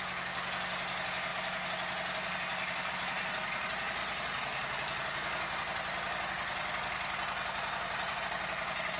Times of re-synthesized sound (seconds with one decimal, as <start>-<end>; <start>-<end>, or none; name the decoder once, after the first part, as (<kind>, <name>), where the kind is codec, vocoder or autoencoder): none